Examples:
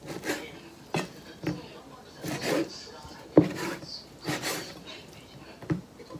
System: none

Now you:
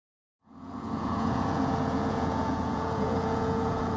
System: vocoder, Vocos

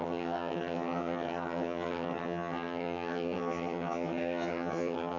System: vocoder, HiFi-GAN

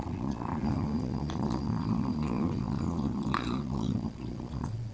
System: vocoder, Vocos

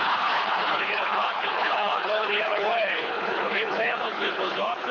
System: codec, HILCodec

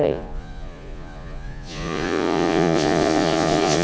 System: vocoder, Vocos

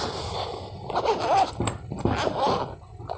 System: none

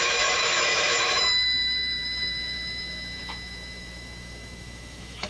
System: autoencoder, DAC-VAE